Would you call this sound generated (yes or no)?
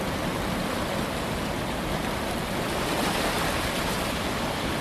yes